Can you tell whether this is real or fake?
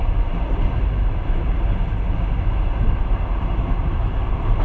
real